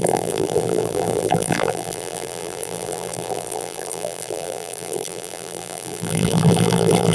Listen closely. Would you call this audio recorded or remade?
remade